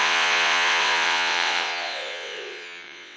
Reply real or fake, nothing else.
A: fake